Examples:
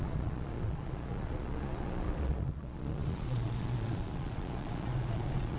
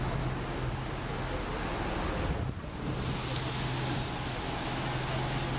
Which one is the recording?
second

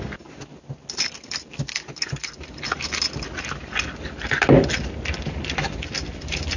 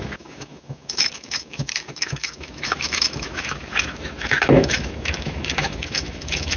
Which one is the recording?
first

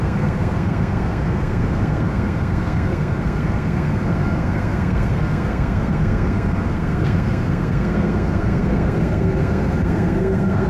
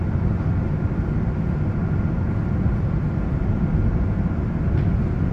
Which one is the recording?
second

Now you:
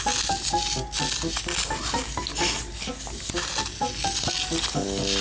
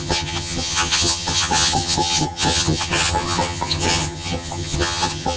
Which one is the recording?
first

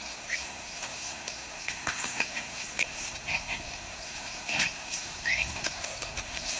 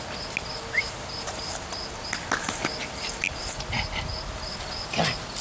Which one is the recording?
second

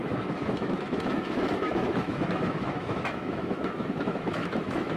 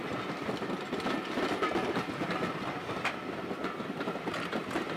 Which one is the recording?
second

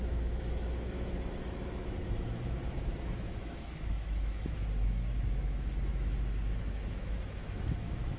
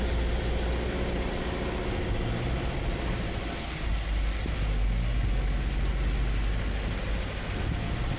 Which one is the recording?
second